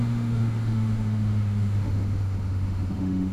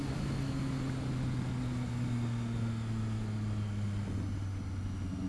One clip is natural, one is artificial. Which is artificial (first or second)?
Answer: first